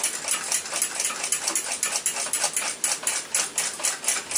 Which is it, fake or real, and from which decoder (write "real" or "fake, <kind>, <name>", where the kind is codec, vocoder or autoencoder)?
real